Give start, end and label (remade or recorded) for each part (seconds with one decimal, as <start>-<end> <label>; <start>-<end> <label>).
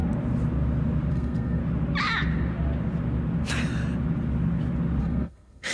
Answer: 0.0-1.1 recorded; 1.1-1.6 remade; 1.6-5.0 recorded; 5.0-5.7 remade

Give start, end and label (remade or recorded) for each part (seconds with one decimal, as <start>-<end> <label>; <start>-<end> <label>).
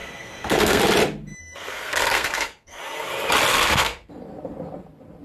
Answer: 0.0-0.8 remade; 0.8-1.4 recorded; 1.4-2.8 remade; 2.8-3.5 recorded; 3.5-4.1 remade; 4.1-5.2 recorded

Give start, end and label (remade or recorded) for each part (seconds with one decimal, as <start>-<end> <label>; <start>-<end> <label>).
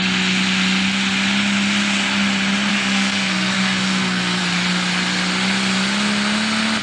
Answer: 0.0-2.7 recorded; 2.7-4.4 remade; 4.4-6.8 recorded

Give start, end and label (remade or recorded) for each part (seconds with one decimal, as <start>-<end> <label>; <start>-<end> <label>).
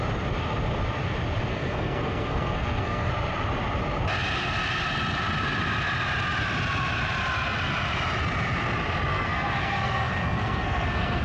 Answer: 0.0-1.5 recorded; 1.5-3.1 remade; 3.1-9.1 recorded; 9.1-11.2 remade